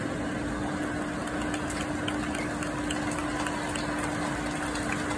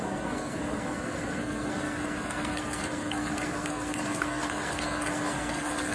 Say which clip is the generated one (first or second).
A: second